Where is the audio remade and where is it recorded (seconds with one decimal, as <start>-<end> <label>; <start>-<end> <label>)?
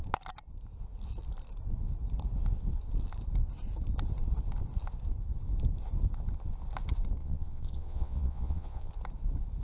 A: 0.0-7.2 recorded; 7.2-8.9 remade; 8.9-9.6 recorded